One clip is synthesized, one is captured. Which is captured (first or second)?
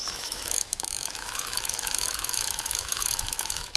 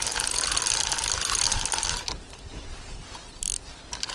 second